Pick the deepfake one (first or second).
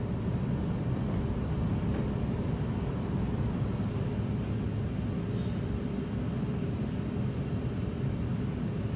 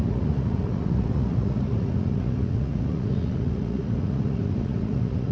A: second